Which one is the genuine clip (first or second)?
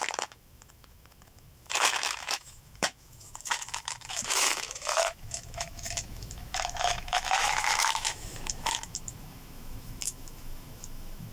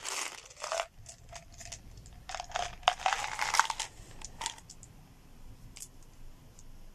second